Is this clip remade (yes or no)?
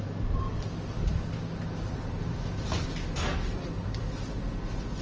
no